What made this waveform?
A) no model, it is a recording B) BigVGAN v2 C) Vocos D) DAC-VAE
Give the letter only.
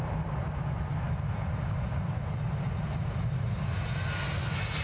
A